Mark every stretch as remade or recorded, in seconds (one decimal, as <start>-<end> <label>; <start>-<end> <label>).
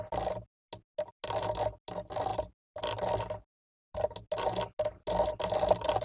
0.0-6.0 recorded